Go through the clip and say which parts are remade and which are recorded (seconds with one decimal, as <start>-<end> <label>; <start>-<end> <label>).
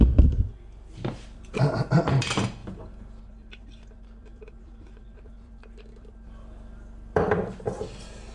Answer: 0.0-2.6 remade; 2.6-3.2 recorded; 3.2-8.3 remade